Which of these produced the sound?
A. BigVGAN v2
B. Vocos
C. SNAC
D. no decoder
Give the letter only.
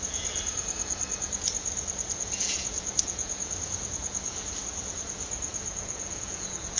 B